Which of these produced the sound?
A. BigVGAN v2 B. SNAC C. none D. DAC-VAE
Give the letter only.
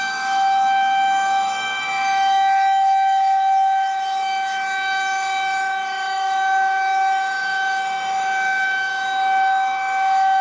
D